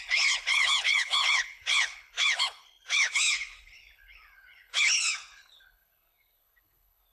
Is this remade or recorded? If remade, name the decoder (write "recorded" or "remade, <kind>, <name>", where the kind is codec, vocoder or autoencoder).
remade, codec, HILCodec